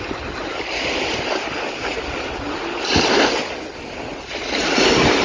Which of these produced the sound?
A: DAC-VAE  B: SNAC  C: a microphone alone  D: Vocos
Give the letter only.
C